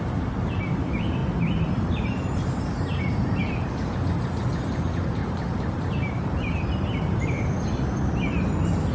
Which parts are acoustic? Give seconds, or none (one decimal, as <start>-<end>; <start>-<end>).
0.0-1.2; 3.4-5.2; 7.2-8.9